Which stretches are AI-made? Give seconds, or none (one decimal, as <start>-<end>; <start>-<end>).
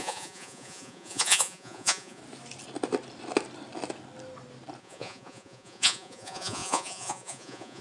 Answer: 0.0-2.2; 4.8-7.8